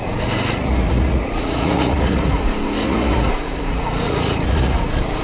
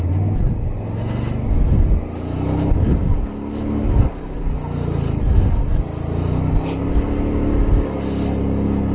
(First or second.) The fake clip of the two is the first